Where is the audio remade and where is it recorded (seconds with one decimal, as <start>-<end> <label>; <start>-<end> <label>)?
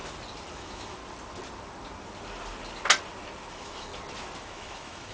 0.0-0.5 recorded; 0.5-1.0 remade; 1.0-3.5 recorded; 3.5-3.9 remade; 3.9-4.4 recorded; 4.4-5.1 remade